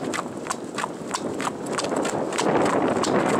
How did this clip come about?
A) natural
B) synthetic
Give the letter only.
A